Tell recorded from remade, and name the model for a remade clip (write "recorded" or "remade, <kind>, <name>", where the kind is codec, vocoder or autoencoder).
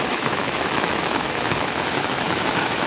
remade, autoencoder, DAC-VAE